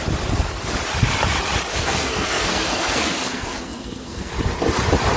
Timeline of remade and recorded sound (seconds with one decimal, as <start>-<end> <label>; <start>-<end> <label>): 0.0-1.7 recorded; 1.7-4.3 remade; 4.3-5.2 recorded